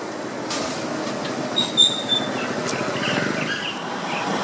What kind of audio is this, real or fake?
real